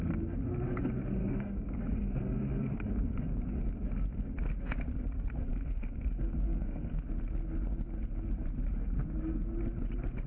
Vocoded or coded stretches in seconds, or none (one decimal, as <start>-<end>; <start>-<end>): 1.2-3.6; 5.5-7.0